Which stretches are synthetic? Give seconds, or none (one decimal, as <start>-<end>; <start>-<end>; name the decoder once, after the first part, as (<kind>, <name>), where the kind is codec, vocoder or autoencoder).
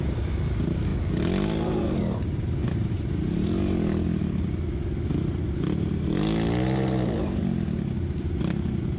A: none